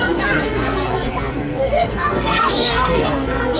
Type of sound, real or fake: fake